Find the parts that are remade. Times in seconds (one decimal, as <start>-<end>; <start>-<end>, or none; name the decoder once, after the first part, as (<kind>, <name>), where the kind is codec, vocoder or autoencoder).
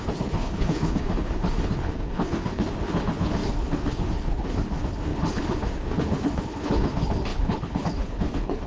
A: 0.0-8.7 (codec, HILCodec)